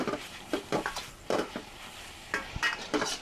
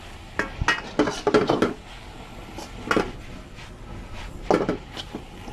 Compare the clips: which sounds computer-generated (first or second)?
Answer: first